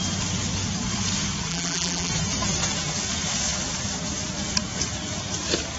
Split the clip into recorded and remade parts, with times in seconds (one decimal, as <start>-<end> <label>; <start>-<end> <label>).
0.0-1.5 recorded; 1.5-2.1 remade; 2.1-5.8 recorded